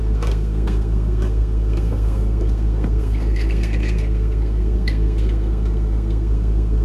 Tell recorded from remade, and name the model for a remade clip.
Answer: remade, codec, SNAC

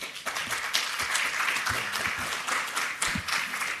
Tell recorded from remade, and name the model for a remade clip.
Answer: recorded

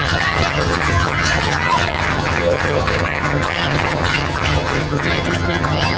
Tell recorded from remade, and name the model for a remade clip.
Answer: remade, vocoder, HiFi-GAN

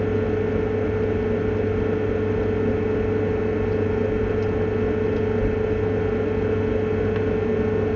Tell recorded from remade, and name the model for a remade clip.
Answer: recorded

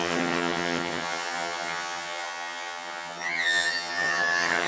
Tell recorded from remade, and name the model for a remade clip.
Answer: remade, vocoder, HiFi-GAN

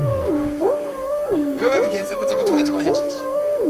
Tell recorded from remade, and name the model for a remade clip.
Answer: remade, codec, SNAC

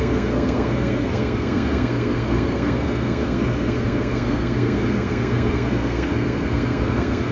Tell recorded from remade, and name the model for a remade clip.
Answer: remade, codec, SNAC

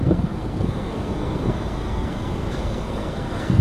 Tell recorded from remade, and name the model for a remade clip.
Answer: remade, codec, SNAC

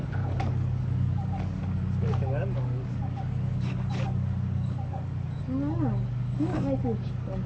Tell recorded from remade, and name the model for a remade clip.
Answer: remade, codec, DAC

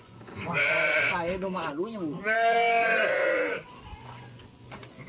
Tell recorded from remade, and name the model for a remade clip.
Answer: remade, vocoder, Vocos